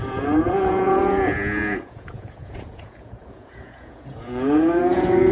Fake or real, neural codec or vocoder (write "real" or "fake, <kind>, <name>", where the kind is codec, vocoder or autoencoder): fake, vocoder, Vocos